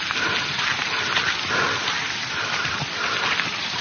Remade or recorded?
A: recorded